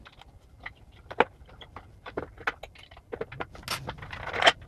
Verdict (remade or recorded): recorded